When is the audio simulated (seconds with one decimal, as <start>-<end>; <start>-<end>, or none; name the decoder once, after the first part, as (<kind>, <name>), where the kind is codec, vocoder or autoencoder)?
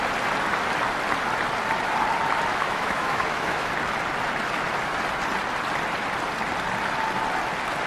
2.5-3.7 (autoencoder, DAC-VAE)